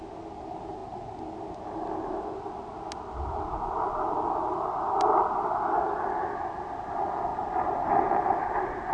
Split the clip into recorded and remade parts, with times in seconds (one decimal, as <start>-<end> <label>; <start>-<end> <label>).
0.0-7.3 recorded; 7.3-8.1 remade; 8.1-8.9 recorded